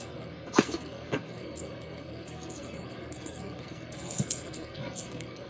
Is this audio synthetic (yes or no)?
yes